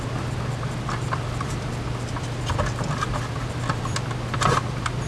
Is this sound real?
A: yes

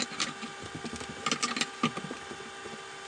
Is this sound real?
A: yes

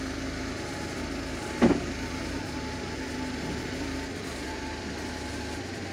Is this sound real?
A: yes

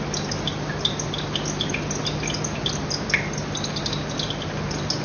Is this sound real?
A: yes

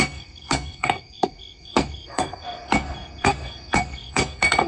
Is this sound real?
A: no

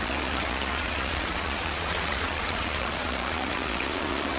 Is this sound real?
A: no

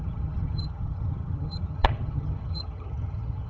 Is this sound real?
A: no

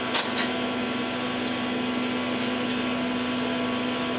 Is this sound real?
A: yes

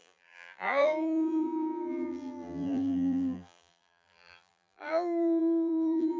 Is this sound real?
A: no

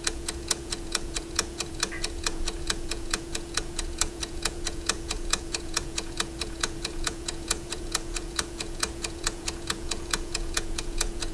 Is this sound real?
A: no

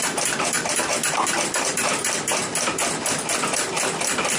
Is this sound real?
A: no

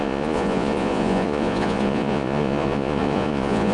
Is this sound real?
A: no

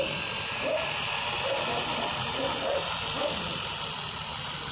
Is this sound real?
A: yes